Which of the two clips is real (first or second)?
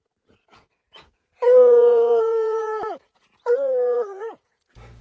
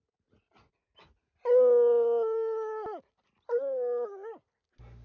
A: second